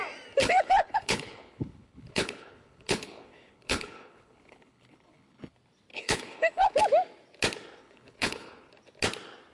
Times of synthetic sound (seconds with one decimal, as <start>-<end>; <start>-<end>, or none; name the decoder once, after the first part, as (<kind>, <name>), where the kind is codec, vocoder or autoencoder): 0.4-5.5 (codec, HILCodec); 5.9-6.8; 7.8-8.7